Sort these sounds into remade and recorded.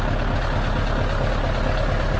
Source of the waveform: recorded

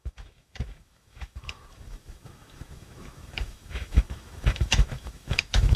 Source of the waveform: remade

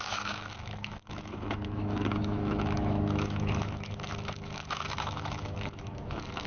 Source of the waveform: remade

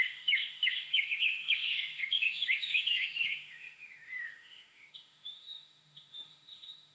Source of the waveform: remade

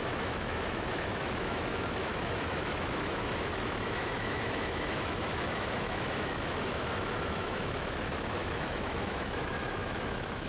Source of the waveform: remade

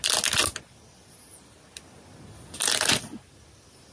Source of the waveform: recorded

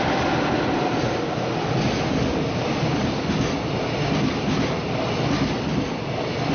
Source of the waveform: recorded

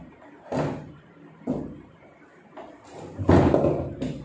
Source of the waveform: recorded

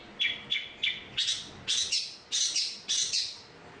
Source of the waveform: recorded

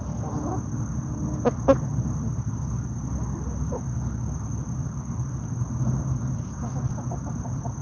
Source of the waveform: recorded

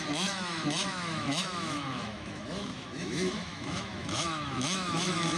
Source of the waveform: remade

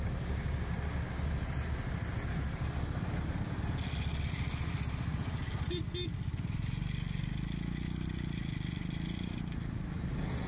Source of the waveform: recorded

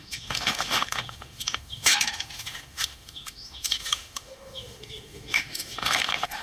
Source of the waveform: remade